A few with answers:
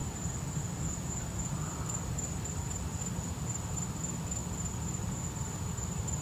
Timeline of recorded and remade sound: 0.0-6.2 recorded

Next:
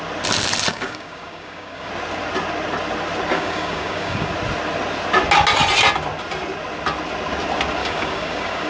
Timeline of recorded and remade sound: 0.0-0.7 recorded; 0.7-1.9 remade; 1.9-3.3 recorded; 3.3-4.3 remade; 4.3-7.8 recorded; 7.8-8.7 remade

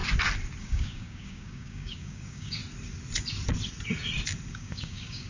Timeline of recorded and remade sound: 0.0-0.6 recorded; 0.6-2.6 remade; 2.6-4.5 recorded; 4.5-5.3 remade

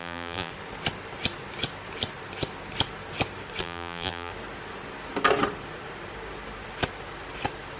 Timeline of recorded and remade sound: 0.0-0.5 remade; 0.5-3.6 recorded; 3.6-4.3 remade; 4.3-7.8 recorded

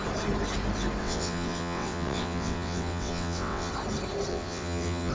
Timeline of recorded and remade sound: 0.0-1.0 recorded; 1.0-3.7 remade; 3.7-4.3 recorded; 4.3-5.1 remade

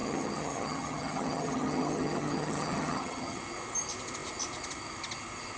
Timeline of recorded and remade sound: 0.0-3.4 remade; 3.4-5.6 recorded